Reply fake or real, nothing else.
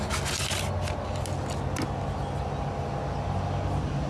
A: real